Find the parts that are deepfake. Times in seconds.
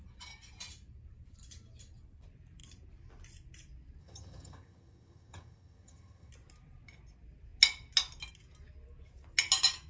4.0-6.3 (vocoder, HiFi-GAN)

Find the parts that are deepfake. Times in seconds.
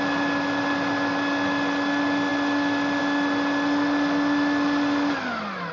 none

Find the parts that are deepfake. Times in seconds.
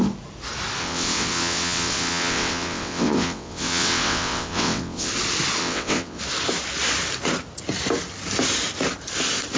0.8-5.1 (vocoder, WaveNeXt); 5.6-6.2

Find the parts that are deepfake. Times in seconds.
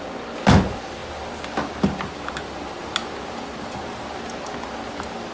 none